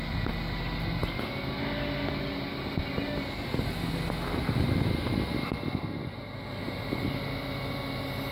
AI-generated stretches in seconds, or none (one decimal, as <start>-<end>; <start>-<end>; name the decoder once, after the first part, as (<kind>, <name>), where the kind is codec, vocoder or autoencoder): none